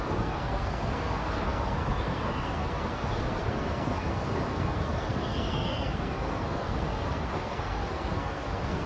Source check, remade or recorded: remade